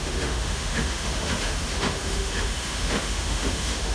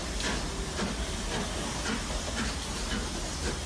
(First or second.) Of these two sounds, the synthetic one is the first